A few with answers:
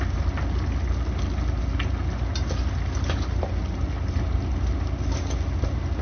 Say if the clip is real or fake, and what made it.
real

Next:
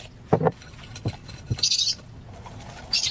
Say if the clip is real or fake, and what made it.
real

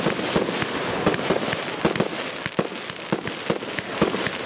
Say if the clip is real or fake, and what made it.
fake, vocoder, BigVGAN v2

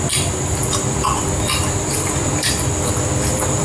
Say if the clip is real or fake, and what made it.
real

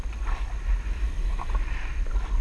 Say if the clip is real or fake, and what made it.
real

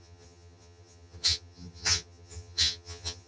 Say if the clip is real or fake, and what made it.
fake, vocoder, HiFi-GAN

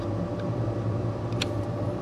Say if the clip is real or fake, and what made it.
real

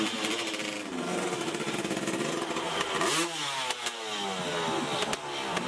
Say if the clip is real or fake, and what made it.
real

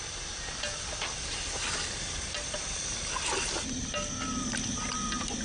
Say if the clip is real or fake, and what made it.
real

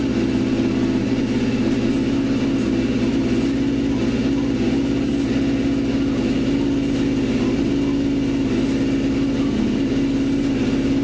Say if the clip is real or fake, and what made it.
real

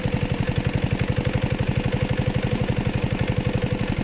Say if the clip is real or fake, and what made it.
real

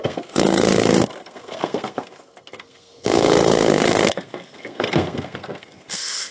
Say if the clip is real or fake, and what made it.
fake, codec, SNAC